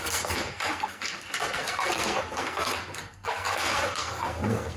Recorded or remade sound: remade